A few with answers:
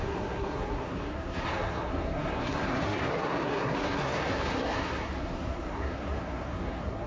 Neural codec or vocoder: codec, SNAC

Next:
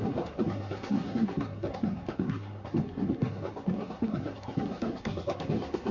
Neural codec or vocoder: codec, SNAC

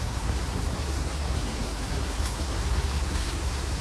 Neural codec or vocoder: codec, SNAC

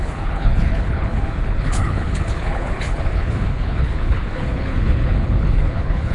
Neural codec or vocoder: codec, HILCodec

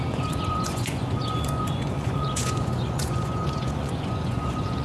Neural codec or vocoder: vocoder, Vocos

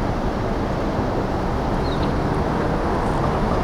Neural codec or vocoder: none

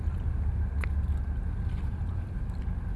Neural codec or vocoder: none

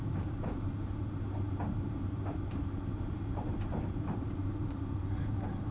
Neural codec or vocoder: vocoder, BigVGAN v2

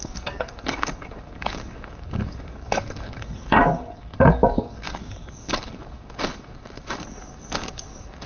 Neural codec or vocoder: codec, DAC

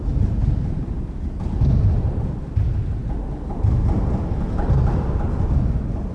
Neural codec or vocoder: none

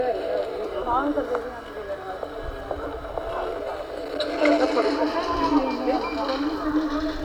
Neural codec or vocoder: none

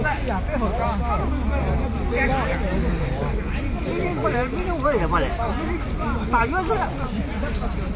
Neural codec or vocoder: none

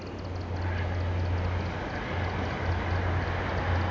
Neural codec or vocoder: none